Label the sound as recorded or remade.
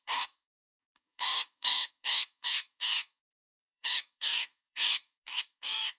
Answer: remade